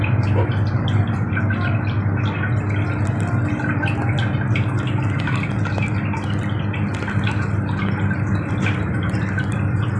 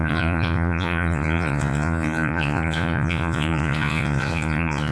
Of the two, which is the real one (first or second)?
first